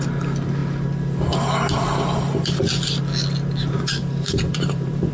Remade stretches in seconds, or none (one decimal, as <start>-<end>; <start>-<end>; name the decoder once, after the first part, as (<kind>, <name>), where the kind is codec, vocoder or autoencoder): 4.0-5.1 (vocoder, BigVGAN v2)